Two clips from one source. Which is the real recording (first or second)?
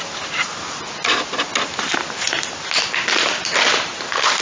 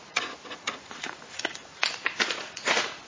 first